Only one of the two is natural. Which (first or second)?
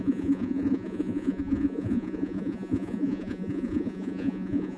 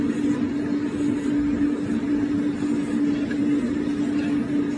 second